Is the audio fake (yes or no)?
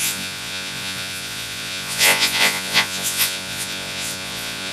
yes